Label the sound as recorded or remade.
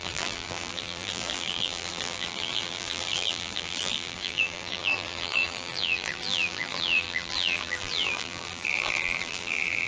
remade